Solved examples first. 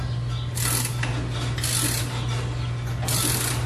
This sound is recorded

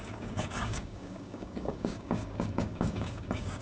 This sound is remade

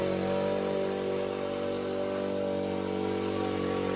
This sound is recorded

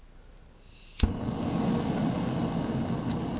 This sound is recorded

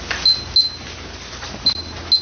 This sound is recorded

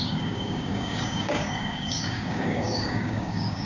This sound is remade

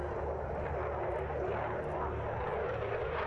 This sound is recorded